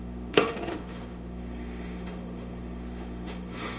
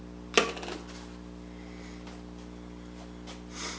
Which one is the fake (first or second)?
first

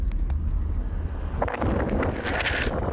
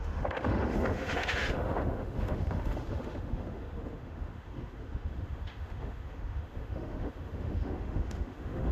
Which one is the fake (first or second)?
second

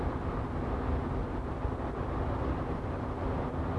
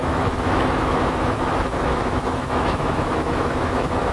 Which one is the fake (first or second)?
second